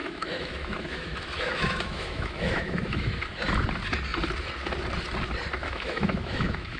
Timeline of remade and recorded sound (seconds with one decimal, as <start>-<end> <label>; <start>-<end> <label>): 0.0-3.1 remade; 3.1-5.6 recorded; 5.6-6.8 remade